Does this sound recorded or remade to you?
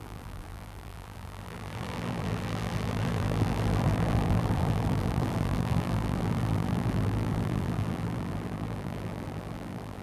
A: remade